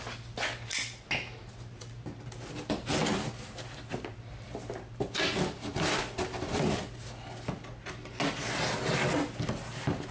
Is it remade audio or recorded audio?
recorded